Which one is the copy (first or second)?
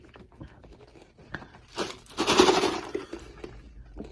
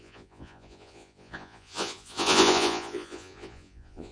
second